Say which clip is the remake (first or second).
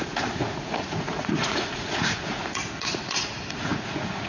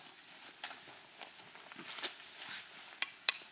first